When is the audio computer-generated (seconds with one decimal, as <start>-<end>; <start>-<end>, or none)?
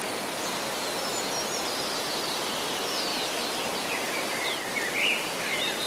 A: 3.1-4.9